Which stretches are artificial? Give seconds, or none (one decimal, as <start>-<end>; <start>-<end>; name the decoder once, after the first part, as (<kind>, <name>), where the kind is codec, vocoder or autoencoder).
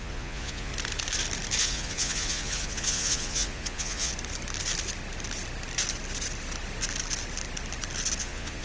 0.0-0.7 (vocoder, Vocos); 1.6-4.1; 8.2-8.6